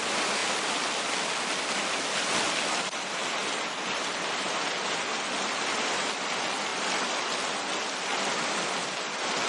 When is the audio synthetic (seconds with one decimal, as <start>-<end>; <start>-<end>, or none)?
none

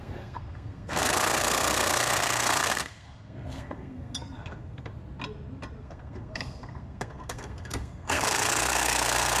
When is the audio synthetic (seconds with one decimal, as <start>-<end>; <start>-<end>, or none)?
0.0-4.9; 5.8-9.4

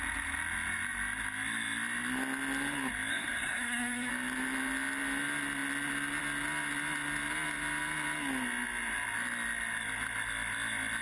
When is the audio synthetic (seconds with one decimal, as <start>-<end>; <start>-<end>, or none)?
3.1-4.1

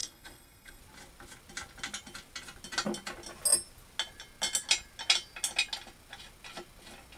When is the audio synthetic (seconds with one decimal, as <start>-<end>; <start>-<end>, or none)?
0.0-0.8